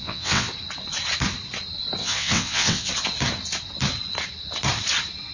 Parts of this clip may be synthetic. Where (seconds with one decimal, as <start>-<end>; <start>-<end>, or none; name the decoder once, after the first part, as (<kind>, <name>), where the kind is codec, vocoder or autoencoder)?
0.0-0.5 (vocoder, WaveNeXt); 2.0-2.9